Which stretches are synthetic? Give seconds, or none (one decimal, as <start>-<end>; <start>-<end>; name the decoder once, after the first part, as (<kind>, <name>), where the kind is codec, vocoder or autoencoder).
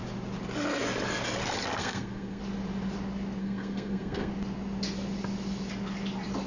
1.8-2.4 (codec, SNAC); 3.4-4.3